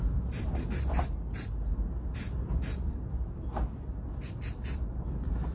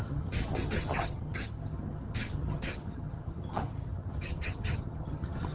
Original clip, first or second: first